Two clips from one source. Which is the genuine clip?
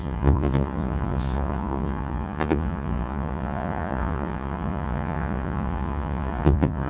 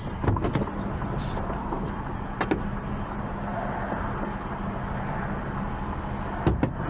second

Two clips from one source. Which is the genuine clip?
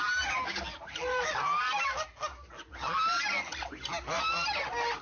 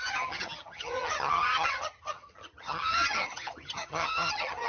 first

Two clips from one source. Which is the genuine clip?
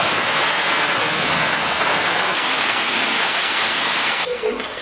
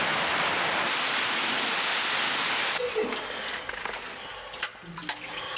second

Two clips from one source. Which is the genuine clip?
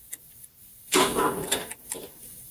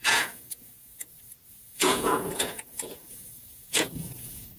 first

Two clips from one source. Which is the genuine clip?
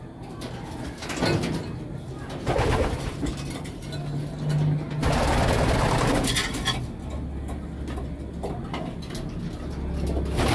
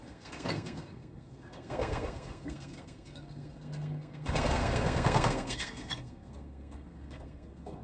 first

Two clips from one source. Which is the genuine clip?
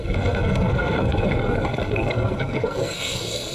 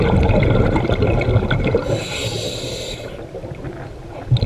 second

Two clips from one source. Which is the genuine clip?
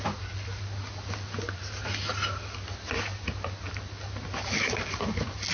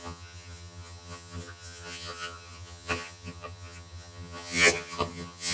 first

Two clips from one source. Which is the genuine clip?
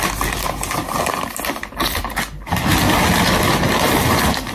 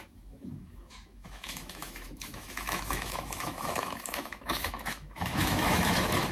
first